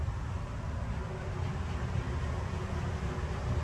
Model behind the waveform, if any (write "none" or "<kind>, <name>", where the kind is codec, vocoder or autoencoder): none